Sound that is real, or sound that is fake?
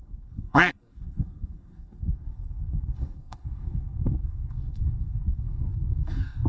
fake